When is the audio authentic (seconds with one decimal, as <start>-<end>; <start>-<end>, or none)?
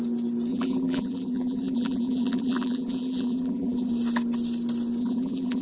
0.0-0.5; 3.9-5.0